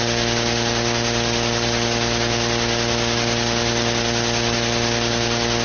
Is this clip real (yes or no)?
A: yes